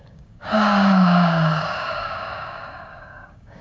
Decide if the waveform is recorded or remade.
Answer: remade